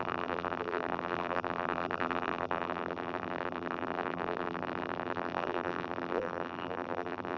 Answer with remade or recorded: remade